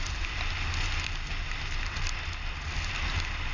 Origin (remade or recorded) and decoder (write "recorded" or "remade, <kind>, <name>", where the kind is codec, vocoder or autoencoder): recorded